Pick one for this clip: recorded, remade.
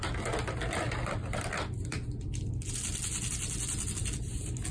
recorded